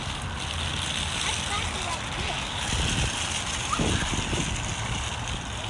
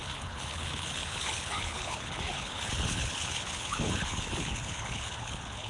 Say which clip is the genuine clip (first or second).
first